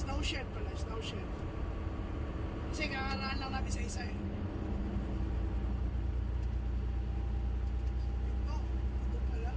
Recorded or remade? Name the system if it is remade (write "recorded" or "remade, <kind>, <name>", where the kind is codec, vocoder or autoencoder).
recorded